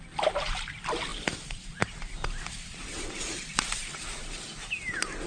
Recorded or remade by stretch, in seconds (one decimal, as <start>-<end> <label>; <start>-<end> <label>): 0.0-5.3 recorded

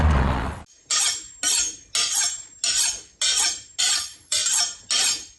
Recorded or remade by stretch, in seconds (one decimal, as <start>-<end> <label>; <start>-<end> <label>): 0.0-0.6 remade; 0.6-3.8 recorded; 3.8-4.4 remade; 4.4-5.4 recorded